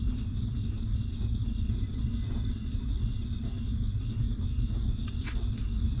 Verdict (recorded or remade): recorded